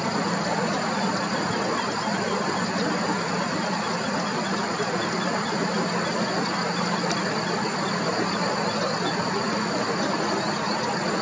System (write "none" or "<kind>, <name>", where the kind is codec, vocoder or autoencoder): none